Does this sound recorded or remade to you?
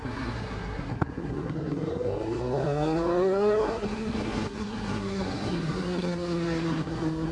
remade